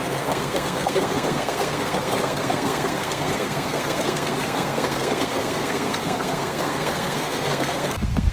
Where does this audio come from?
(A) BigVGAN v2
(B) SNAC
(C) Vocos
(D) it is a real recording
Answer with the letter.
B